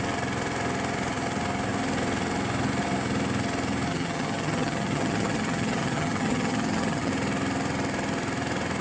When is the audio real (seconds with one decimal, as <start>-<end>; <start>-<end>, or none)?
0.0-3.9; 7.1-8.8